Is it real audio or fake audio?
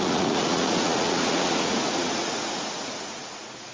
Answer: fake